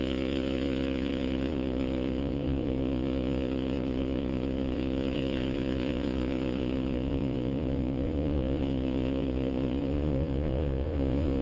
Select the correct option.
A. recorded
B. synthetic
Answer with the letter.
B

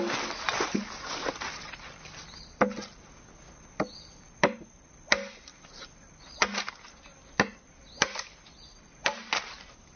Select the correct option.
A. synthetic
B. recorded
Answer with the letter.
B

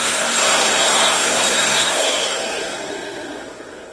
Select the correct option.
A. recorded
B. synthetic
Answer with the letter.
B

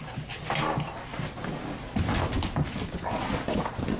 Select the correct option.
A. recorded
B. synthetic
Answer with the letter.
A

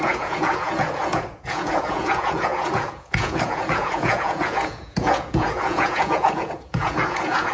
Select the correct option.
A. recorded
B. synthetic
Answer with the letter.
B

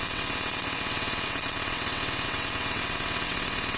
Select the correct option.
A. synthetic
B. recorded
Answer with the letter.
A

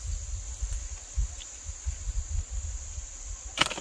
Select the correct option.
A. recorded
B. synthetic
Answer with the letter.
A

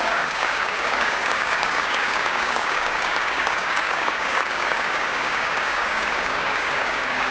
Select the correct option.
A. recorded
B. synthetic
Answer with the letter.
B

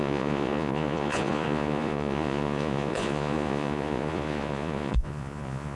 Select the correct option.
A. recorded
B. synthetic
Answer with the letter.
B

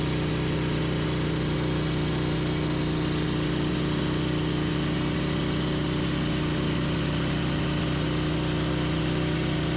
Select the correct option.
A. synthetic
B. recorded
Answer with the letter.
B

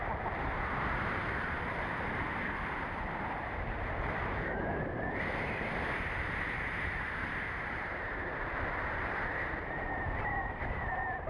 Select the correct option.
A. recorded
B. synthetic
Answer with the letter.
A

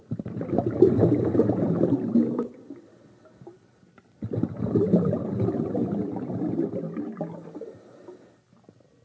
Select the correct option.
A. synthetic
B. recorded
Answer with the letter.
B